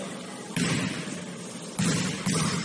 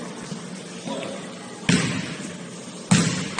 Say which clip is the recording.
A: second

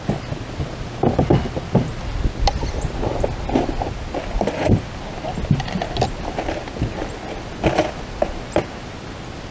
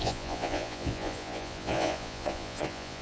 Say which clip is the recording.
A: first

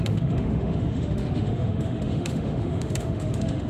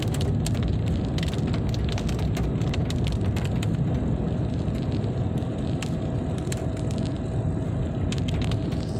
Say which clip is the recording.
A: second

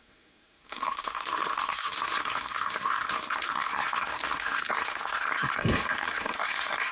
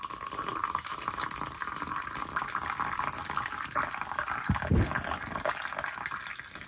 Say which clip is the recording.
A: second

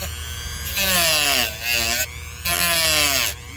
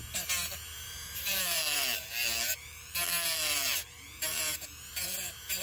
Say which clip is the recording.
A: first